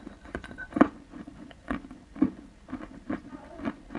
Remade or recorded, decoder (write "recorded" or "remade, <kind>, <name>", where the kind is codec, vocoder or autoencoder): remade, vocoder, Vocos